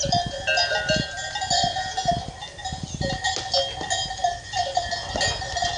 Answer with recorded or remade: recorded